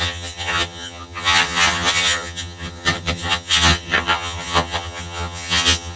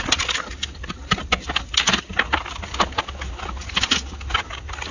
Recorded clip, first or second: second